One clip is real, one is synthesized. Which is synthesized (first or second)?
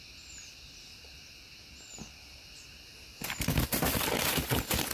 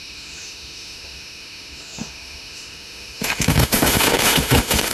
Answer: second